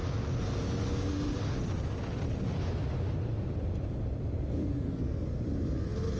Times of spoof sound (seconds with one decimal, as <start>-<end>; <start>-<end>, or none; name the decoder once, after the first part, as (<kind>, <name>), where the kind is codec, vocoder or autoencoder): 4.6-5.3 (codec, SNAC)